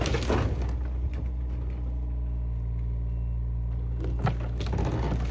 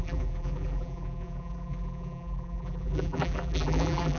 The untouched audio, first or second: first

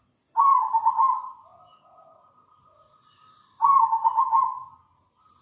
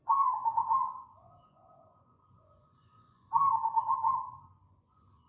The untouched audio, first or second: first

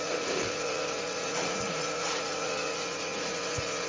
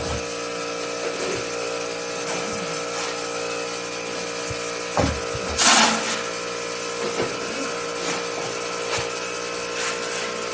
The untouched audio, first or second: second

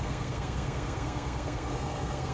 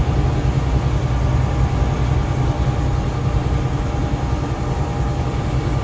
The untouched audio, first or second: second